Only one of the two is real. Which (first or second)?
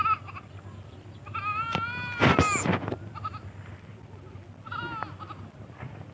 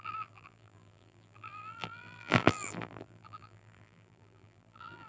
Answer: first